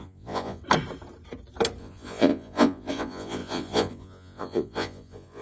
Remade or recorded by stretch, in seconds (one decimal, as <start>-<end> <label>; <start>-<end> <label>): 0.0-0.6 remade; 0.6-1.8 recorded; 1.8-5.4 remade